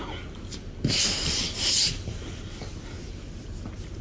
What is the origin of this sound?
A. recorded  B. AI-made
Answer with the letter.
A